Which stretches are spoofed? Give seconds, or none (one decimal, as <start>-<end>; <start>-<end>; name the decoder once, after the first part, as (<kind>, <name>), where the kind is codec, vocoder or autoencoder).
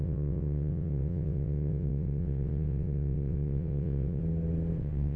0.0-4.2 (vocoder, WaveNeXt); 4.8-5.2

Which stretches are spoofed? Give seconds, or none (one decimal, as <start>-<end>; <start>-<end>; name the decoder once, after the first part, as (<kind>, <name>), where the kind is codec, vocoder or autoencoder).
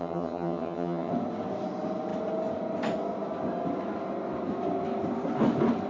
0.0-1.1 (vocoder, HiFi-GAN)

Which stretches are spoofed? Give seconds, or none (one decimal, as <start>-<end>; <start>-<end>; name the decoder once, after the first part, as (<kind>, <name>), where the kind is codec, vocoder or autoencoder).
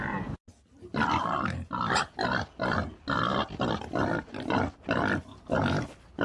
none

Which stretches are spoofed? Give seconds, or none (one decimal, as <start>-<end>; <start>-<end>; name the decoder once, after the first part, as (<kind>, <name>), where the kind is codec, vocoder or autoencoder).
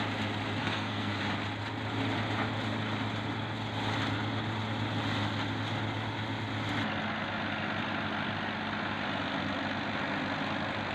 0.6-1.2 (codec, SNAC)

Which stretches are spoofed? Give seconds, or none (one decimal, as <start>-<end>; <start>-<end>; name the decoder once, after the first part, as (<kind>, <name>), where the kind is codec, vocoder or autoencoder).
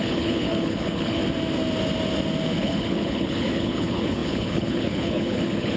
0.0-1.2 (codec, HILCodec); 2.6-5.8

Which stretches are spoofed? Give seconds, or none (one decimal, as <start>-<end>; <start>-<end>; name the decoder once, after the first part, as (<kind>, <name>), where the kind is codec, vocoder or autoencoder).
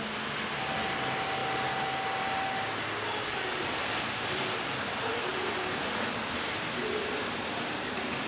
none